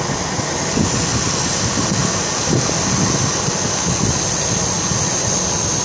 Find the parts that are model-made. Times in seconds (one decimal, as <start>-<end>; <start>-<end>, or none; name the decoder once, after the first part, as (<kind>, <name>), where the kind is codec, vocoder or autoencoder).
none